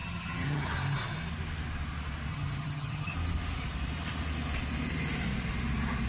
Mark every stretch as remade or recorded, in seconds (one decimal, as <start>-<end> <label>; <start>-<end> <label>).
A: 0.0-0.7 remade; 0.7-2.3 recorded; 2.3-3.1 remade; 3.1-6.1 recorded